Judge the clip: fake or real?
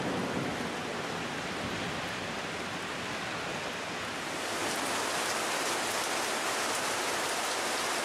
real